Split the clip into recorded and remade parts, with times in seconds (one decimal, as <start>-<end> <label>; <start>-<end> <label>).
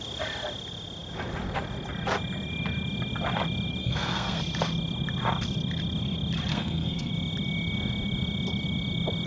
0.0-3.8 recorded; 3.8-4.4 remade; 4.4-6.5 recorded; 6.5-7.1 remade; 7.1-9.3 recorded